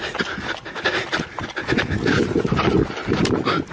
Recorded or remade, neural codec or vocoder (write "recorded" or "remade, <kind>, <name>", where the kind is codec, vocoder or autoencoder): recorded